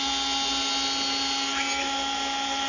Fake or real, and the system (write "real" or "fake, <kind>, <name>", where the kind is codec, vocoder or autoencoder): real